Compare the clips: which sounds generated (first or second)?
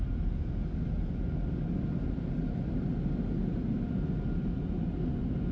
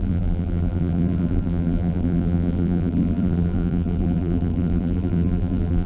second